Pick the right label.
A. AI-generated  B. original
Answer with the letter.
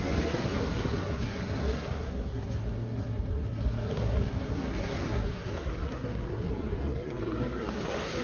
A